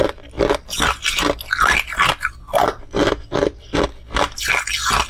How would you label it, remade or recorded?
recorded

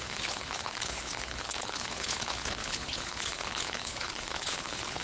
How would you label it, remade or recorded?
remade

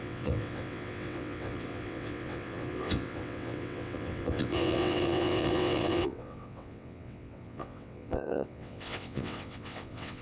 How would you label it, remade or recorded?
remade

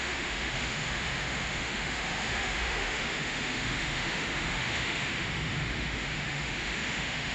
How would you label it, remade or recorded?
remade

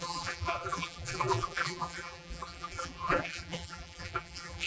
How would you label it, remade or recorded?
remade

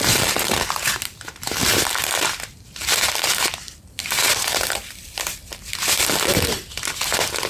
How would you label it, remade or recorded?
remade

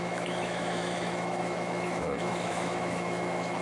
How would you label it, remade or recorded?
remade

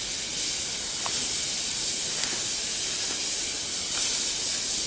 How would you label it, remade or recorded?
recorded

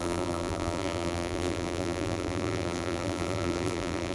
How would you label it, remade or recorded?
remade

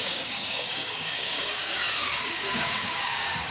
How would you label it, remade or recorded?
remade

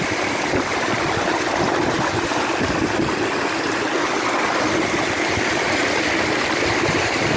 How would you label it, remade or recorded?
recorded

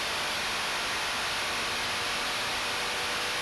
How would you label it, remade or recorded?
recorded